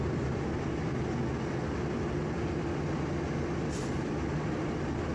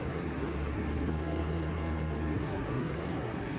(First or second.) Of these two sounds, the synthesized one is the second